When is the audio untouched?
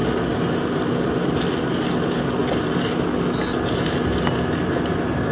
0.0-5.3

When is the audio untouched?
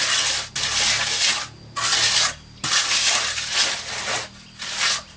0.0-5.2